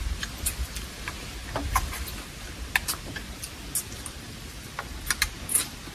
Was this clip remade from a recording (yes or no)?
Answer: no